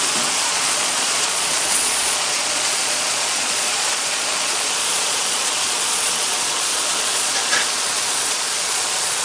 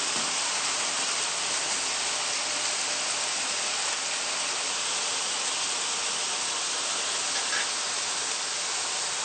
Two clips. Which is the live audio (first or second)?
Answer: second